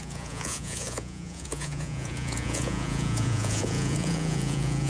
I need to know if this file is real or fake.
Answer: fake